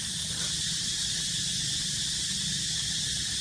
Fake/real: real